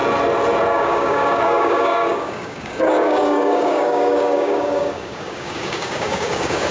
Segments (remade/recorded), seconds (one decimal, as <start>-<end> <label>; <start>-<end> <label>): 0.0-0.7 recorded; 0.7-6.7 remade